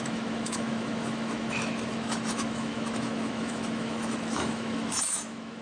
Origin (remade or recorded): remade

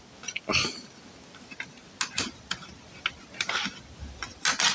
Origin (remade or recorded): recorded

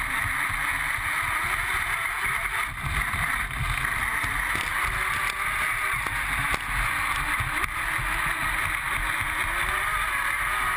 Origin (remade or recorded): recorded